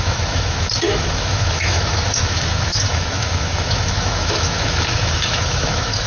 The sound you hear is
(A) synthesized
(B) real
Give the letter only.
A